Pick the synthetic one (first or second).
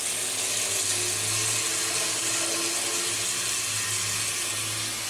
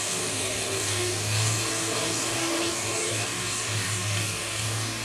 second